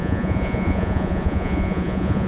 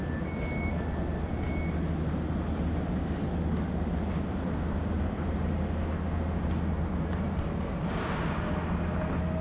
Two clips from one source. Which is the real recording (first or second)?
second